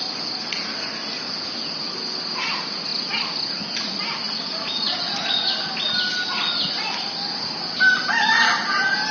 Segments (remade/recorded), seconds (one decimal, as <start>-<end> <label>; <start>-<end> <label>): 0.0-9.1 recorded